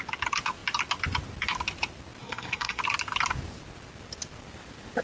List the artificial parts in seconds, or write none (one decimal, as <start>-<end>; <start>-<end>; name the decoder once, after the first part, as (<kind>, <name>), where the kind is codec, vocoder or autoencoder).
2.2-2.8 (codec, SNAC)